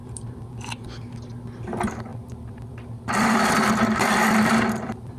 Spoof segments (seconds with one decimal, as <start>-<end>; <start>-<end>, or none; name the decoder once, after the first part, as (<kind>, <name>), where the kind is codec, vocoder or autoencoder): 0.0-0.7 (vocoder, BigVGAN v2); 2.1-5.2